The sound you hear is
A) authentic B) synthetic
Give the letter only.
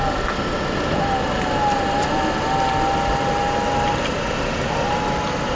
A